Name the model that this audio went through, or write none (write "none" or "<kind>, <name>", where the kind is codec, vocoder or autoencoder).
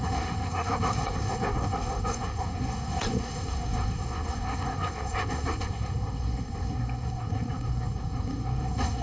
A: codec, SNAC